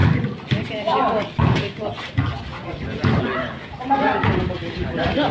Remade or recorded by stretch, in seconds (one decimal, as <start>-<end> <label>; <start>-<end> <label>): 0.0-5.3 recorded